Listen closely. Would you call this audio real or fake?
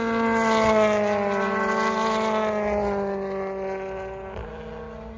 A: real